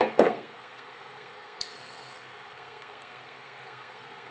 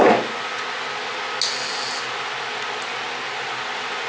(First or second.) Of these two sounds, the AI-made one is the first